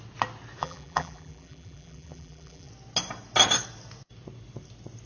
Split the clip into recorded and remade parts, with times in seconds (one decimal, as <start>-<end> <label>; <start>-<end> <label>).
0.0-0.6 recorded; 0.6-2.7 remade; 2.7-5.1 recorded